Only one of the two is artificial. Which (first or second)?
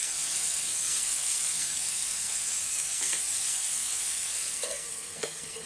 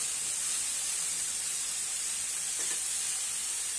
first